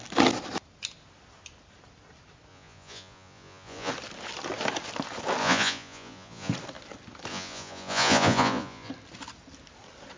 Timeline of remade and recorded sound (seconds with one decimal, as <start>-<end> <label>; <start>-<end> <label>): 0.0-2.5 recorded; 2.5-3.9 remade; 3.9-5.4 recorded; 5.4-6.5 remade; 6.5-7.3 recorded; 7.3-8.9 remade; 8.9-10.2 recorded

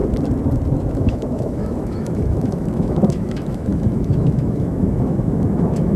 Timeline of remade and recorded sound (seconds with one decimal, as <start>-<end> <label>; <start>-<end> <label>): 0.0-0.9 recorded; 0.9-6.0 remade

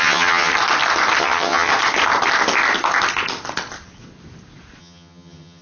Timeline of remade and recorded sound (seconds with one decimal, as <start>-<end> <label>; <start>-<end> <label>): 0.0-0.5 remade; 0.5-1.2 recorded; 1.2-1.7 remade; 1.7-4.8 recorded; 4.8-5.6 remade